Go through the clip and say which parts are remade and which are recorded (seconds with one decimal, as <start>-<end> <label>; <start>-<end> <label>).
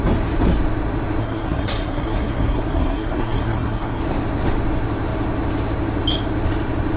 0.0-1.2 recorded; 1.2-4.0 remade; 4.0-7.0 recorded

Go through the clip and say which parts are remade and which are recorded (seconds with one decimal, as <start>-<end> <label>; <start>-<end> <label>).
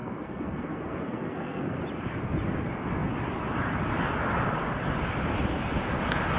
0.0-1.8 remade; 1.8-6.4 recorded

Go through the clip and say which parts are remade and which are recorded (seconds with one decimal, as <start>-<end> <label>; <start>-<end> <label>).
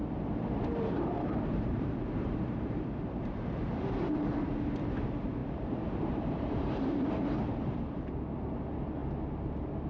0.0-1.3 recorded; 1.3-3.5 remade; 3.5-5.4 recorded; 5.4-7.8 remade; 7.8-9.9 recorded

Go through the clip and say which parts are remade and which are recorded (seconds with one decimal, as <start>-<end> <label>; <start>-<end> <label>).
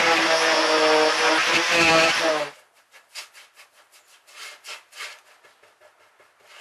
0.0-1.4 recorded; 1.4-2.3 remade; 2.3-4.7 recorded; 4.7-5.2 remade; 5.2-6.6 recorded